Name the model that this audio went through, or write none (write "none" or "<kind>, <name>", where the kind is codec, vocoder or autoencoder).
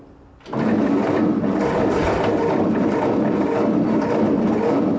none